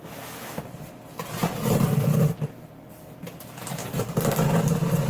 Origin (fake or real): real